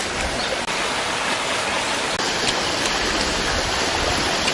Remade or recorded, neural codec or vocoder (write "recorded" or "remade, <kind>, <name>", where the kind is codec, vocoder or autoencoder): recorded